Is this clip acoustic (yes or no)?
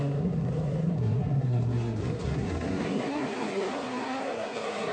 no